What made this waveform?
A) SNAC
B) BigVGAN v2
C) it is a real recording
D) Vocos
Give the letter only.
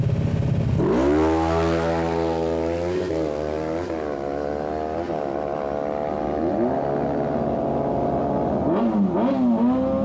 C